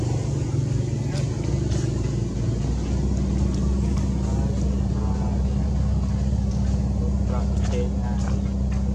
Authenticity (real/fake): real